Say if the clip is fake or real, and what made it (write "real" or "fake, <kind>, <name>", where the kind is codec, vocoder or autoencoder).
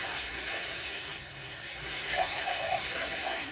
fake, codec, SNAC